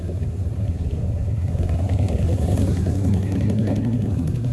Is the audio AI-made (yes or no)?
yes